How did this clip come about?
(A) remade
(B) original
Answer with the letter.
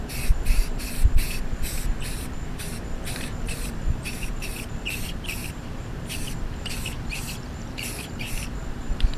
A